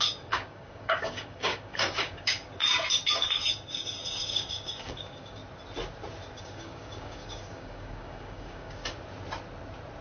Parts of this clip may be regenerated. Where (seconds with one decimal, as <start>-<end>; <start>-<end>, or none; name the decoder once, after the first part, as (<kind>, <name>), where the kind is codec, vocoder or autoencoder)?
0.0-5.4 (codec, DAC); 6.4-8.8